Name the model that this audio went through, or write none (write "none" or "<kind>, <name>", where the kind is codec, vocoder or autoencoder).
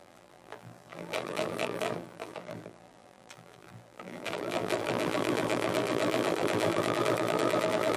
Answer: vocoder, BigVGAN v2